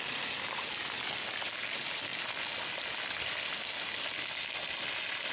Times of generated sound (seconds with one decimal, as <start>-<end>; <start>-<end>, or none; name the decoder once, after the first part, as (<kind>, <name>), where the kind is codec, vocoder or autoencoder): none